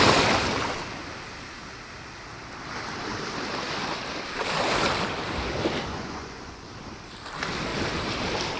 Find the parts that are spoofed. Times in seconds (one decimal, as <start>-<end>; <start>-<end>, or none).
5.9-6.7

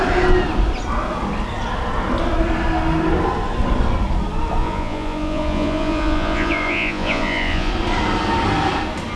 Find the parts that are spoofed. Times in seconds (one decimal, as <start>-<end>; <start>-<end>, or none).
4.6-7.7

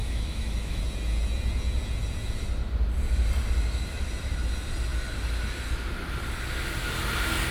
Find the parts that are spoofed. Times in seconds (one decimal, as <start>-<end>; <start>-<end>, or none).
0.0-0.8

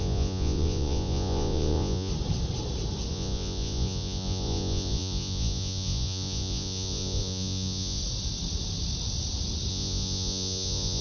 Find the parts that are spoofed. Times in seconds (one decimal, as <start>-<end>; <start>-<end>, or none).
0.0-2.1; 3.1-8.0; 9.7-11.0

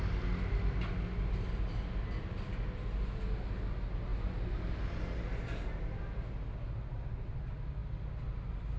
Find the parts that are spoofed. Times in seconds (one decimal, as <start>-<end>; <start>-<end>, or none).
none

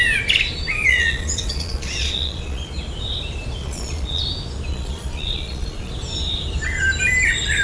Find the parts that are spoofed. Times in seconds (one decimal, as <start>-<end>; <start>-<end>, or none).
0.9-2.7; 3.6-4.2; 4.7-5.9

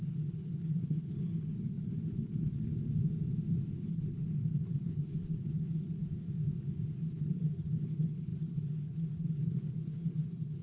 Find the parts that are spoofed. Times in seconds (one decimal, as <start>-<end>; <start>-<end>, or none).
0.0-2.7; 3.8-6.0; 7.1-10.6

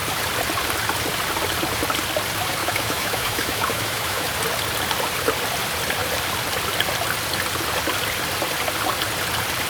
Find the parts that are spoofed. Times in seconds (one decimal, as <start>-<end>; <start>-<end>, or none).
2.6-4.3